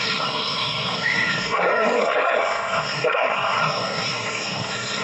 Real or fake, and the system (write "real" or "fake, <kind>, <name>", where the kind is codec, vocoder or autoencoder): fake, codec, SNAC